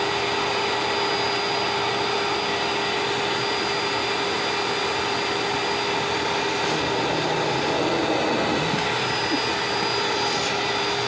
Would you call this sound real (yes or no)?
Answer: yes